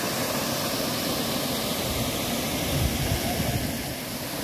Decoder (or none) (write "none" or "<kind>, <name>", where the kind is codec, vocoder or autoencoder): none